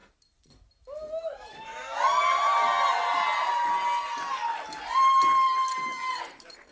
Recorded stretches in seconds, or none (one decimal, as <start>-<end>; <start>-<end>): 0.0-1.2; 1.7-2.2; 3.0-6.2